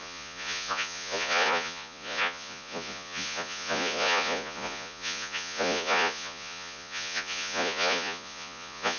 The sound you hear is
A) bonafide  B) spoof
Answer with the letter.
B